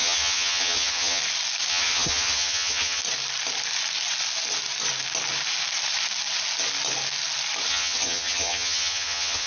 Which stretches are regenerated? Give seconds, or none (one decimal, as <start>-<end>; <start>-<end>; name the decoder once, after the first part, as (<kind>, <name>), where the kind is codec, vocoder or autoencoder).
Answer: 0.0-1.2 (vocoder, HiFi-GAN); 1.7-3.0; 7.7-9.5